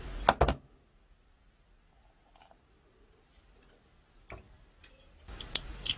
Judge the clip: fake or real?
real